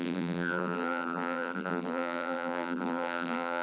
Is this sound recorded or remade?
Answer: remade